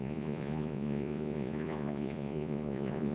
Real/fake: fake